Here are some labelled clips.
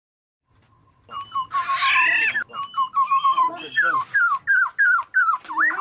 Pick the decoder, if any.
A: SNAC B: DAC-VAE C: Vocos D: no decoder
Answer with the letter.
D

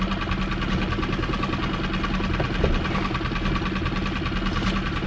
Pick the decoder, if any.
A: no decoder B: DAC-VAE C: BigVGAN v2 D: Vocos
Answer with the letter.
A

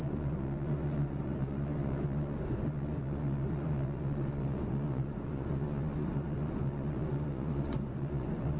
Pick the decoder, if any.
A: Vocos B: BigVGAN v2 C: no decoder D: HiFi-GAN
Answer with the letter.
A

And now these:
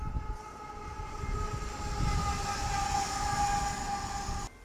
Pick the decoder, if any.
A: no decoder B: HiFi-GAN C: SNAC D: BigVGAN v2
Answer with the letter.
A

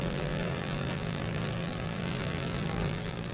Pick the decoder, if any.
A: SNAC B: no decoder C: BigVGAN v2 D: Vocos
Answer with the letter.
C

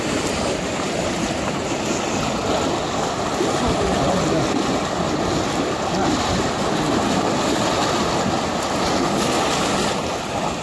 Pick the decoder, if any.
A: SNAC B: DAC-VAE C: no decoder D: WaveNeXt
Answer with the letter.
C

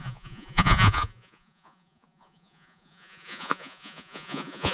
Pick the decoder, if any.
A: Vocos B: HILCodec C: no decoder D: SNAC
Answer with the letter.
A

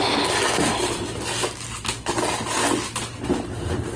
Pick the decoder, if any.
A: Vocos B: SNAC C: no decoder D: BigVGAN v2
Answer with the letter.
C